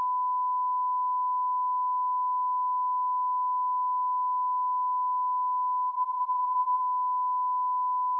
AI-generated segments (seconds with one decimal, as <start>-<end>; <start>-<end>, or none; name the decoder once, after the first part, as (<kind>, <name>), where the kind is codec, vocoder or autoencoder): 5.9-6.8 (vocoder, Vocos)